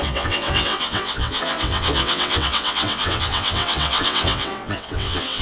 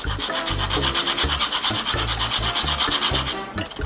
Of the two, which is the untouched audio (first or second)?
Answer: second